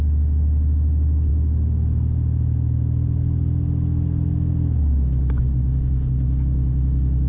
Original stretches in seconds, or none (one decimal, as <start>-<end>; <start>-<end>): 0.0-7.3

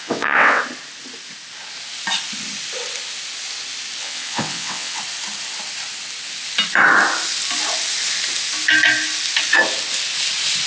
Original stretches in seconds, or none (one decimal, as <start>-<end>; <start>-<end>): 0.6-4.0; 5.0-10.7

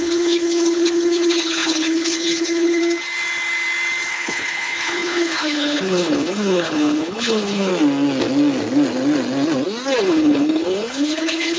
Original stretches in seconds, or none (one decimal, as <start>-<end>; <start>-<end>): 2.8-4.1; 7.7-10.0

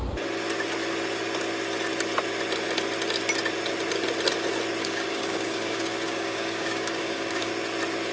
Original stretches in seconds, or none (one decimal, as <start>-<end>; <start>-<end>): 0.0-4.8; 7.5-8.1

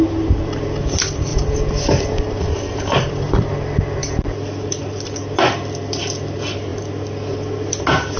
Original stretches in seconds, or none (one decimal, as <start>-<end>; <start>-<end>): 1.3-2.9; 6.7-8.2